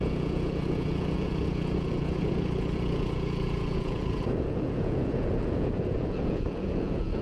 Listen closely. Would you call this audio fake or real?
fake